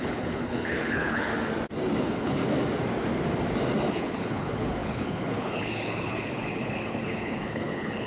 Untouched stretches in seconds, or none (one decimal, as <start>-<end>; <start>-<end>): 1.3-2.0; 2.4-3.9